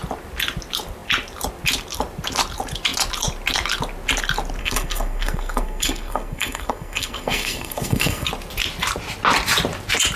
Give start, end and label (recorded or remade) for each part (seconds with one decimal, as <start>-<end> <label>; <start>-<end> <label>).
0.0-4.6 recorded; 4.6-8.3 remade; 8.3-10.2 recorded